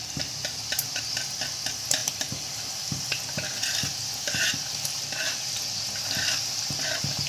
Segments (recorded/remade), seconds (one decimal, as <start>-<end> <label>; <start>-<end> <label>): 0.0-7.3 recorded